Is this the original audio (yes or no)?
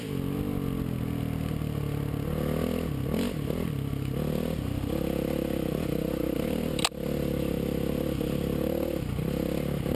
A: yes